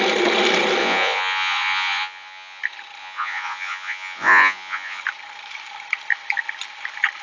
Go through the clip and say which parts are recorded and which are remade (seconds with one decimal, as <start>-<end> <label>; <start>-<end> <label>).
0.0-0.8 recorded; 0.8-2.6 remade; 2.6-3.0 recorded; 3.0-5.0 remade; 5.0-7.2 recorded

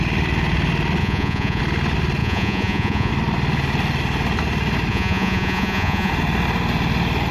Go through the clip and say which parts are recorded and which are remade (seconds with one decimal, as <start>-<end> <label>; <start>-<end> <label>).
0.0-1.0 recorded; 1.0-1.6 remade; 1.6-2.2 recorded; 2.2-3.1 remade; 3.1-4.9 recorded; 4.9-6.1 remade; 6.1-7.3 recorded

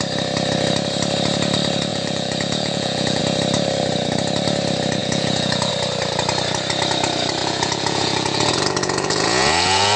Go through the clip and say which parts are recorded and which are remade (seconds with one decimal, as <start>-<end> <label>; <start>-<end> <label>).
0.0-1.9 recorded; 1.9-3.2 remade; 3.2-5.0 recorded; 5.0-5.7 remade; 5.7-7.4 recorded; 7.4-10.0 remade

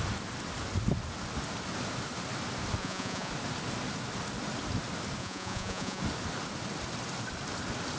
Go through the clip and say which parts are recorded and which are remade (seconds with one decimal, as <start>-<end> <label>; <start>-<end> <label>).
0.0-2.8 recorded; 2.8-3.3 remade; 3.3-5.2 recorded; 5.2-6.0 remade; 6.0-8.0 recorded

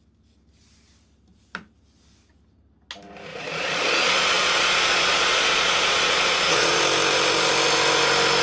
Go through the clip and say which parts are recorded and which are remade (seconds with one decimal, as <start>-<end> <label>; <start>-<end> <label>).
0.0-3.3 recorded; 3.3-6.8 remade; 6.8-8.4 recorded

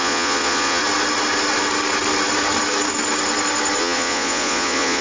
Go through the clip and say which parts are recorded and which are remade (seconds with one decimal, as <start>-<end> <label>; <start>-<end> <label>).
0.0-0.8 remade; 0.8-3.8 recorded; 3.8-5.0 remade